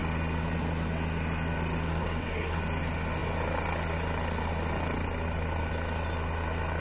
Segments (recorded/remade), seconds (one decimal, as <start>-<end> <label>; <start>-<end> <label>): 0.0-1.9 recorded; 1.9-2.6 remade; 2.6-6.8 recorded